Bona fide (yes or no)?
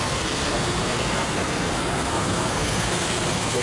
no